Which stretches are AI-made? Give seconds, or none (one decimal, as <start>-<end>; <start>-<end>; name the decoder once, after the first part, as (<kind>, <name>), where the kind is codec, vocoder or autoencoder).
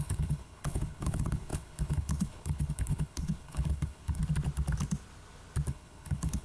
0.0-4.2 (codec, HILCodec); 5.7-6.4